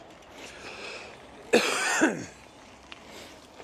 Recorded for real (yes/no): yes